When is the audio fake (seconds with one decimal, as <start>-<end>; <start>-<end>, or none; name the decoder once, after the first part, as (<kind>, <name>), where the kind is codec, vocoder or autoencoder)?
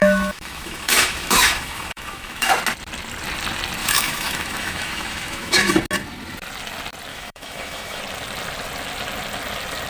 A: 0.0-2.5 (autoencoder, DAC-VAE); 3.8-5.7; 7.1-8.0